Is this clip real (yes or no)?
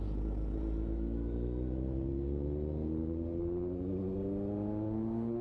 yes